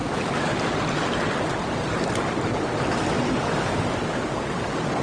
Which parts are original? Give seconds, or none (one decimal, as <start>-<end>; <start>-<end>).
0.0-5.0